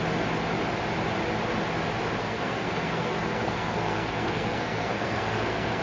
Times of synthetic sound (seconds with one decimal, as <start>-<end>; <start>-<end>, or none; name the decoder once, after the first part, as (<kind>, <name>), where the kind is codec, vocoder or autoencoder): 2.2-5.8 (codec, SNAC)